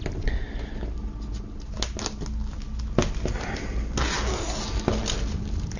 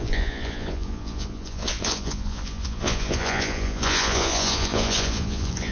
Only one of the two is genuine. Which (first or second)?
first